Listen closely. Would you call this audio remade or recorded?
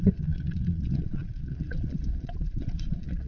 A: remade